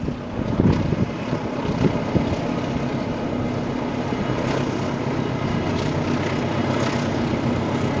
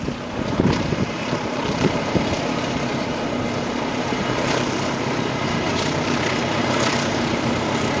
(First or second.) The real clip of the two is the first